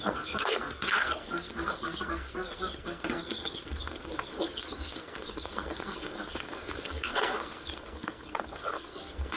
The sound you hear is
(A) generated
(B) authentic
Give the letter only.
A